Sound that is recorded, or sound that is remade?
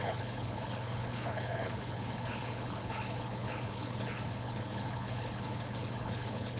remade